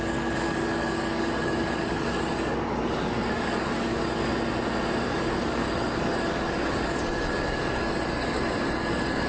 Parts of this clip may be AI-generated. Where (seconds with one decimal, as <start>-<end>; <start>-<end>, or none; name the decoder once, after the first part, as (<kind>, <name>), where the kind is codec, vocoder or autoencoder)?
0.0-4.3 (codec, DAC); 5.1-9.3